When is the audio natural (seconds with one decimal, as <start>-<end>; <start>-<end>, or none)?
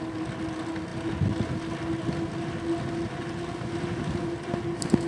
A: 0.0-5.1